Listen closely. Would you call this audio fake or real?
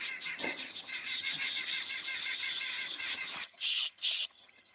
fake